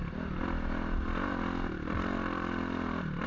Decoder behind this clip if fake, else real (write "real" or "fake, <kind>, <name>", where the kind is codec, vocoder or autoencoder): real